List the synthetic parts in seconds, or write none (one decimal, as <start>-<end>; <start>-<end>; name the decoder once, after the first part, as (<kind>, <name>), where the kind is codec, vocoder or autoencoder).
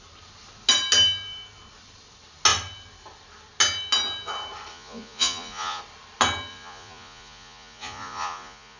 4.7-5.8 (vocoder, Vocos); 6.5-8.8